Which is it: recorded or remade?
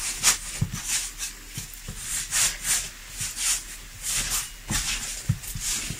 recorded